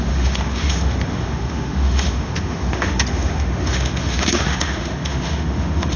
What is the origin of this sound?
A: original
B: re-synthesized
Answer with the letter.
B